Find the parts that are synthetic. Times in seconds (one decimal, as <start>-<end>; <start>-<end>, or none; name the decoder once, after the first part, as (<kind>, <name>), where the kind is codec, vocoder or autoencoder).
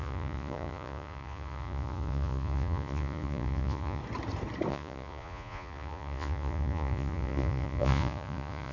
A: 0.0-4.0 (vocoder, Vocos); 4.7-8.7